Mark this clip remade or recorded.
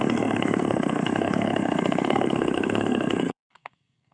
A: remade